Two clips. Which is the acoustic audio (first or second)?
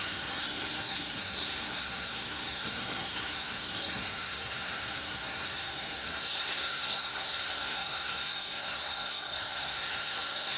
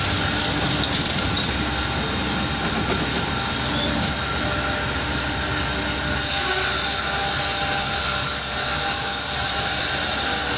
second